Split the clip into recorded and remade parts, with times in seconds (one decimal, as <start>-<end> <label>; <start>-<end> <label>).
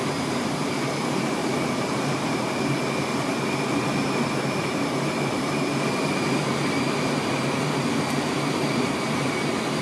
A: 0.0-1.4 recorded; 1.4-2.6 remade; 2.6-3.1 recorded; 3.1-7.3 remade; 7.3-9.8 recorded